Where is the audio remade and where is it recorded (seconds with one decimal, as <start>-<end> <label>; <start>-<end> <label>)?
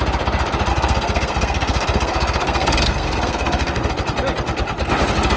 0.0-0.7 recorded; 0.7-3.9 remade; 3.9-5.4 recorded